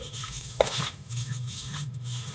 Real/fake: fake